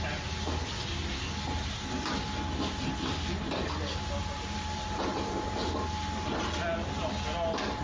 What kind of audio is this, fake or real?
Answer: real